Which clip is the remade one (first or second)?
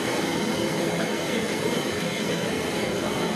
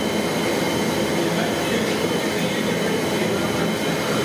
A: first